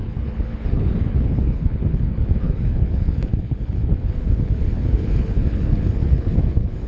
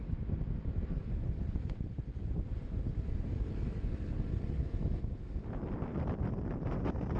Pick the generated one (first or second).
first